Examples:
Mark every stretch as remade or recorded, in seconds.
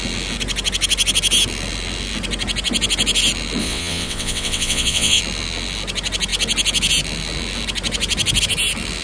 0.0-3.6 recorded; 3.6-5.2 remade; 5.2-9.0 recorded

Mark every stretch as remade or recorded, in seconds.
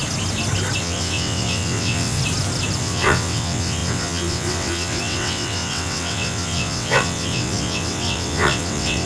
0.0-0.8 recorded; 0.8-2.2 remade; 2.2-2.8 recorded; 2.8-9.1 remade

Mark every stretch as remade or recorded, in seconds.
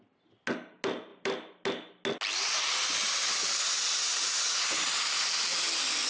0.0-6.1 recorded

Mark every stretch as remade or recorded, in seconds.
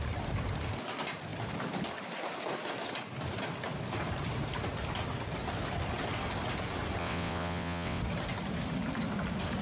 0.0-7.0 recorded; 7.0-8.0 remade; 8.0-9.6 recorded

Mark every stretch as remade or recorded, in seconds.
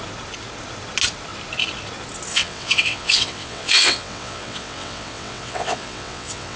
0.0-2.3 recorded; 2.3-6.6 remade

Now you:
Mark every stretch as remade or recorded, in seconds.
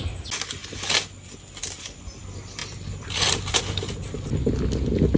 0.0-5.2 recorded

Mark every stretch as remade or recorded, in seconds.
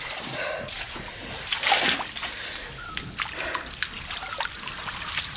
0.0-5.4 recorded